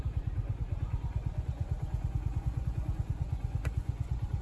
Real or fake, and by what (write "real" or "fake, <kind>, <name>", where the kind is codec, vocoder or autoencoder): fake, vocoder, Vocos